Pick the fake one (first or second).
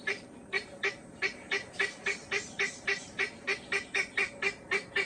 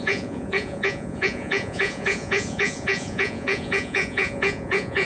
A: second